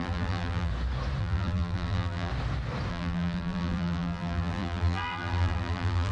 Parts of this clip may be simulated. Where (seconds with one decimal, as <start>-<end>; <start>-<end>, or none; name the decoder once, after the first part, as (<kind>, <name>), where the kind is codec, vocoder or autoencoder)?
0.0-0.7 (vocoder, BigVGAN v2); 1.2-2.3; 2.9-6.1